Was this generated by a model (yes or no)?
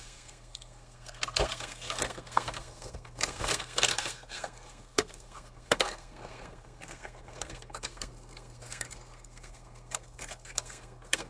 yes